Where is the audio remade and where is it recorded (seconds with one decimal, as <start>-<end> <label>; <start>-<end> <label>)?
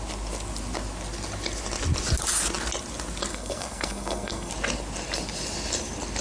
0.0-3.3 recorded; 3.3-4.5 remade; 4.5-6.2 recorded